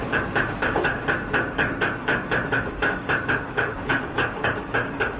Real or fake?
fake